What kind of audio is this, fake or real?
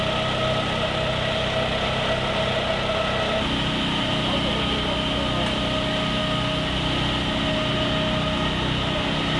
real